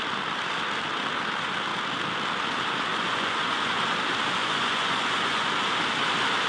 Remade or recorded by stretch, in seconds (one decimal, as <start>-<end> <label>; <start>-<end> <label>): 0.0-2.9 recorded; 2.9-3.8 remade; 3.8-4.4 recorded; 4.4-5.5 remade; 5.5-6.5 recorded